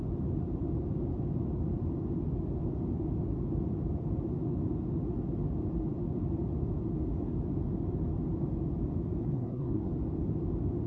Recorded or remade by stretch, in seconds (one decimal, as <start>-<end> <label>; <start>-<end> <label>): 0.0-9.2 recorded; 9.2-9.9 remade; 9.9-10.9 recorded